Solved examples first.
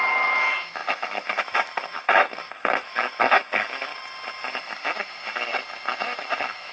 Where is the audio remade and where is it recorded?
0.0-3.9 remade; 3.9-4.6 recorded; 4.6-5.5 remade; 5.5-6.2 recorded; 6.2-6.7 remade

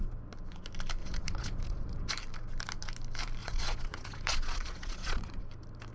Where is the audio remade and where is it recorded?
0.0-1.0 recorded; 1.0-2.1 remade; 2.1-3.4 recorded; 3.4-5.4 remade; 5.4-5.9 recorded

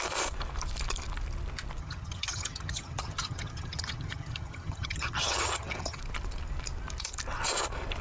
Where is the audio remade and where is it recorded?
0.0-1.8 recorded; 1.8-6.0 remade; 6.0-8.0 recorded

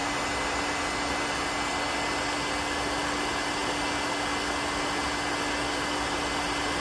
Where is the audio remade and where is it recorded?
0.0-6.8 recorded

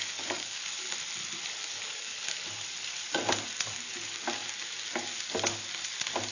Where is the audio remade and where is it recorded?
0.0-0.6 remade; 0.6-1.6 recorded; 1.6-2.4 remade; 2.4-6.3 recorded

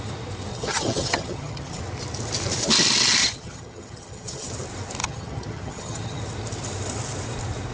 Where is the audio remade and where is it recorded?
0.0-0.5 recorded; 0.5-1.8 remade; 1.8-3.2 recorded; 3.2-4.5 remade; 4.5-5.0 recorded; 5.0-6.2 remade; 6.2-7.7 recorded